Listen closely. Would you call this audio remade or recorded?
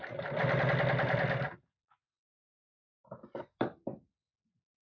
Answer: recorded